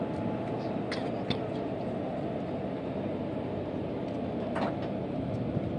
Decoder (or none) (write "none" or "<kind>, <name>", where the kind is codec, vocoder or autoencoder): none